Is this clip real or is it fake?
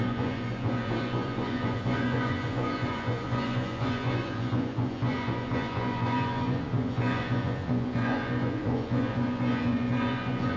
fake